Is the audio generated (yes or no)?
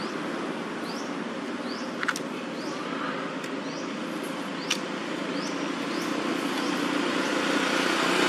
no